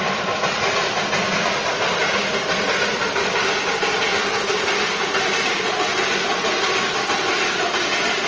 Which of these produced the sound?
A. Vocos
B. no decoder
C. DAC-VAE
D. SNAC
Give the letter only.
B